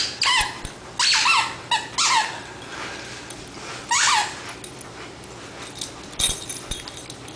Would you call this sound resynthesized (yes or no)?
no